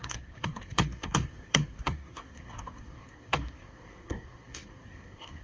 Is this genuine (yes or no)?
no